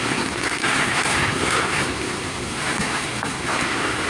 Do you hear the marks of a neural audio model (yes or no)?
yes